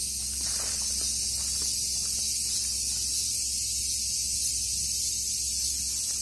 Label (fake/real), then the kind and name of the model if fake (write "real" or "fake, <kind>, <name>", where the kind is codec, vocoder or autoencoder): real